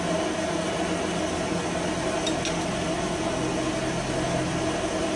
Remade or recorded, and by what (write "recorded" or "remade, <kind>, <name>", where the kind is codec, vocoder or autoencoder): recorded